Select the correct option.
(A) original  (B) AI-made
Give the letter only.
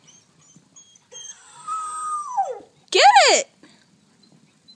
A